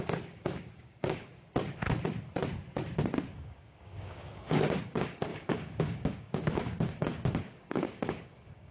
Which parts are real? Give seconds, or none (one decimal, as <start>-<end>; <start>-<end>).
1.3-3.4